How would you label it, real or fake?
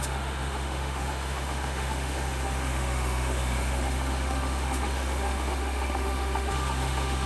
fake